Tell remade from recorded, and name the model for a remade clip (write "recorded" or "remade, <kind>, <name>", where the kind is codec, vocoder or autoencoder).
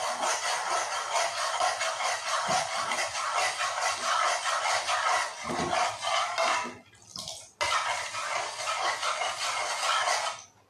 recorded